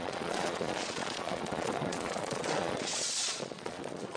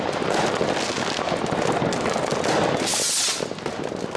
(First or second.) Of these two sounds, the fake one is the first